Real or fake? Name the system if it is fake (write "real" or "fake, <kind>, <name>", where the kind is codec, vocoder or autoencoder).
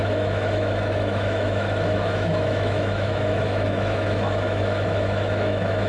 fake, autoencoder, DAC-VAE